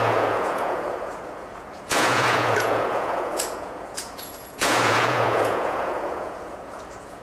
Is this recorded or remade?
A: remade